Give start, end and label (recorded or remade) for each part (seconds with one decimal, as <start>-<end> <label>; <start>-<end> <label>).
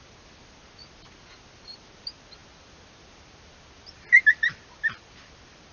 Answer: 0.0-5.7 recorded